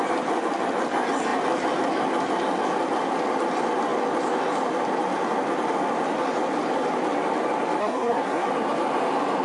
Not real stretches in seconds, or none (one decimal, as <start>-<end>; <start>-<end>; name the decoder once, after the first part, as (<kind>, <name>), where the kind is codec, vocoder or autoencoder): 7.8-8.5 (codec, SNAC)